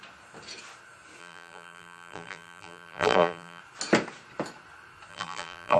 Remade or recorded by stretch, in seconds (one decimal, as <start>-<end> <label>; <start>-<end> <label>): 0.0-1.2 recorded; 1.2-3.6 remade; 3.6-5.1 recorded; 5.1-5.8 remade